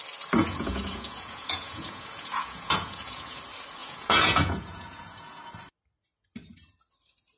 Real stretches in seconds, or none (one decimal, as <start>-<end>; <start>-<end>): 0.0-0.4; 3.4-3.8; 5.5-7.4

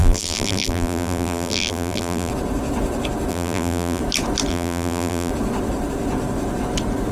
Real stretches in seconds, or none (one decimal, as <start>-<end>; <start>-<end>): 2.3-3.3; 4.0-4.5; 5.3-7.1

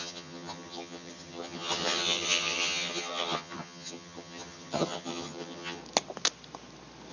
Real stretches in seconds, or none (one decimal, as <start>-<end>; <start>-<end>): 5.8-7.1

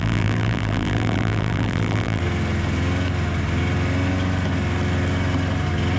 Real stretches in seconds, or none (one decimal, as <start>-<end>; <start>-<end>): 2.2-6.0

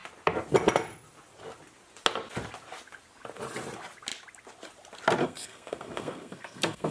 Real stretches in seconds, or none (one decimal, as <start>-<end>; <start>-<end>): 0.0-5.2